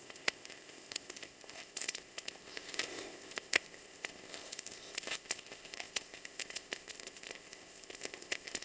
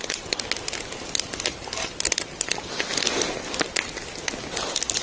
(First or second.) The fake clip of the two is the first